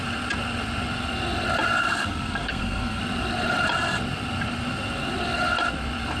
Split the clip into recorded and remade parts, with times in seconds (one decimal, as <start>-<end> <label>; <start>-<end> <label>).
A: 0.0-1.8 recorded; 1.8-3.0 remade; 3.0-6.2 recorded

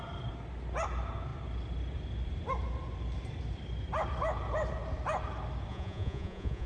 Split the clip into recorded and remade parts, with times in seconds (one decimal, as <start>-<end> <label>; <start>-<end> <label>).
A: 0.0-5.7 recorded; 5.7-6.7 remade

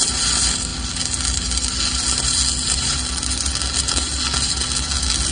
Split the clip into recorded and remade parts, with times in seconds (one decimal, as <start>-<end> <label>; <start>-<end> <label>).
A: 0.0-5.3 recorded

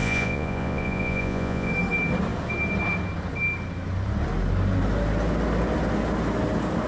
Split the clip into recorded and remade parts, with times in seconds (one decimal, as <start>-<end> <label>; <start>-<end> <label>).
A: 0.0-1.7 remade; 1.7-6.9 recorded